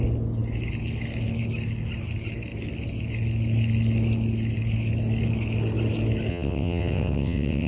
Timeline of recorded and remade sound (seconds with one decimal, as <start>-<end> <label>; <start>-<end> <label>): 0.0-6.3 recorded; 6.3-7.7 remade